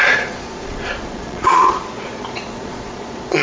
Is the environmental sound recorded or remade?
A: remade